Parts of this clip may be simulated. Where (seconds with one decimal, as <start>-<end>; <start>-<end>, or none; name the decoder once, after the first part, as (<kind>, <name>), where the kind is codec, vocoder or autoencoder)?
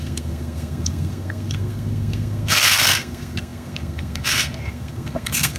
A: 0.0-5.6 (codec, SNAC)